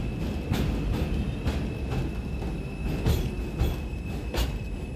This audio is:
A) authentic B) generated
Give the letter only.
A